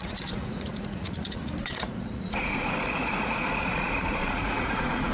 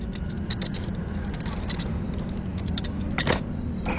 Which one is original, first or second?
second